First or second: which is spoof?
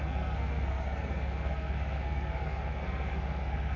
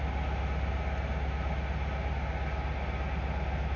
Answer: first